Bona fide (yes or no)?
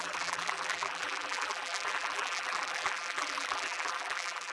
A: no